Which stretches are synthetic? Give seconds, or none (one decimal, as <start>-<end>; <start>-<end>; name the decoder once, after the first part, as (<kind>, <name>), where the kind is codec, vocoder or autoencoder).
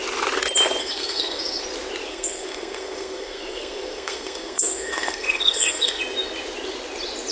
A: 0.8-1.6 (codec, SNAC); 2.1-6.0